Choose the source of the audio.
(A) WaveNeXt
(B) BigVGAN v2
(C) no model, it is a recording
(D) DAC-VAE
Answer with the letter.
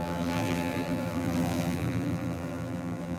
B